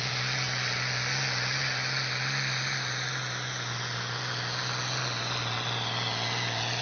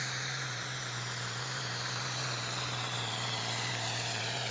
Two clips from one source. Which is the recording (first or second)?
first